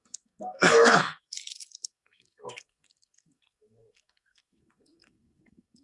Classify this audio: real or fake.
fake